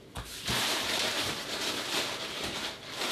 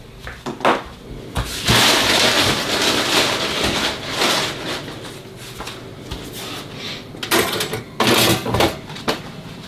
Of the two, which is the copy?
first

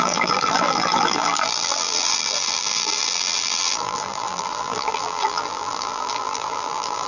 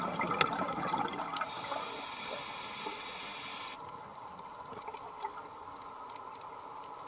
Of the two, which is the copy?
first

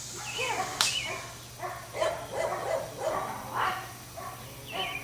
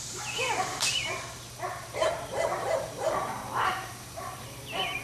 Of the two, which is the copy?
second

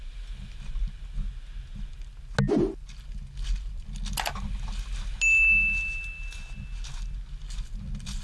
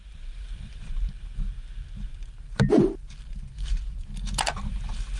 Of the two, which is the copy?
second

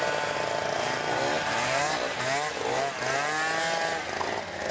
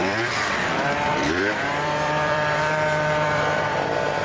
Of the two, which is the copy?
second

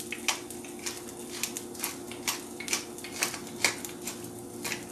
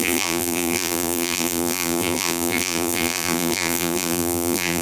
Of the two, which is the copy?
second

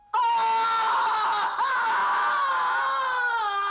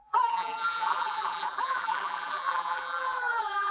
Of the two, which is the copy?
second